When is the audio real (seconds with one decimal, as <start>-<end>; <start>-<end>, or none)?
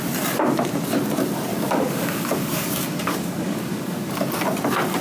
0.0-1.5; 4.1-5.0